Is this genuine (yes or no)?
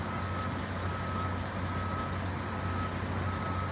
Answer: yes